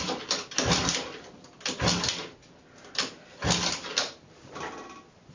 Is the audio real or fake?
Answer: real